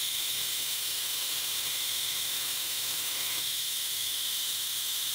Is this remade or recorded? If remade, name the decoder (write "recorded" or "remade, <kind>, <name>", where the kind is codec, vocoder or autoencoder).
remade, autoencoder, DAC-VAE